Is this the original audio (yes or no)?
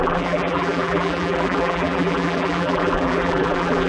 no